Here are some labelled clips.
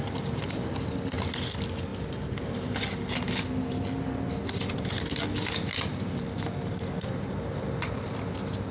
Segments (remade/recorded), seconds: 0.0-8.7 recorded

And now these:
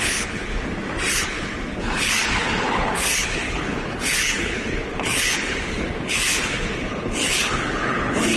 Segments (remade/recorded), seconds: 0.0-0.5 remade; 0.5-1.1 recorded; 1.1-8.4 remade

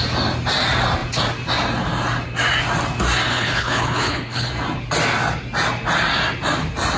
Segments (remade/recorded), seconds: 0.0-3.3 recorded; 3.3-4.5 remade; 4.5-7.0 recorded

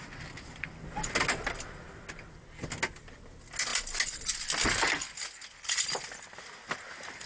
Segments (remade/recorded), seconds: 0.0-7.3 recorded

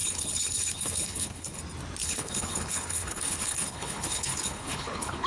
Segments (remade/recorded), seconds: 0.0-1.6 remade; 1.6-2.0 recorded; 2.0-5.3 remade

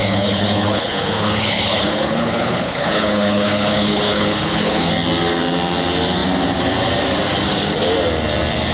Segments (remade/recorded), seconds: 0.0-4.9 remade; 4.9-8.7 recorded

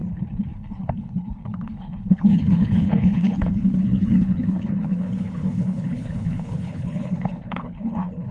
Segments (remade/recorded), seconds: 0.0-8.3 remade